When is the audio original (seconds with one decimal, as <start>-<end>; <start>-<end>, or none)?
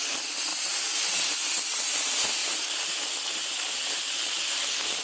0.0-5.0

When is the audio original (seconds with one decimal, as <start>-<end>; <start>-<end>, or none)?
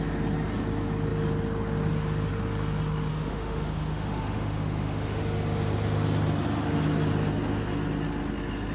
0.0-3.1; 5.2-8.7